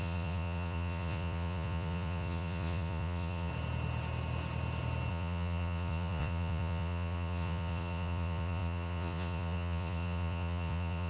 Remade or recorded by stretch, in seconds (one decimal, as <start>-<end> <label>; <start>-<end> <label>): 0.0-3.5 remade; 3.5-5.1 recorded; 5.1-11.1 remade